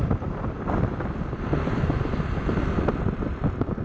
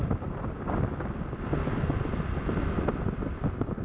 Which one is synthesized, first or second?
first